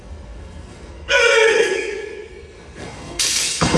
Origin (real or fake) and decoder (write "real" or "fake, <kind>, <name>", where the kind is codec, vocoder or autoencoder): fake, codec, SNAC